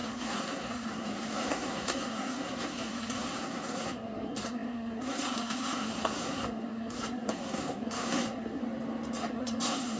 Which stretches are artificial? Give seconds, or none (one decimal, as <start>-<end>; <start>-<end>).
0.0-8.6; 9.3-10.0